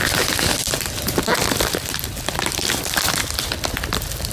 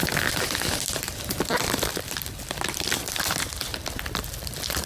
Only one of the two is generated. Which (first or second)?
second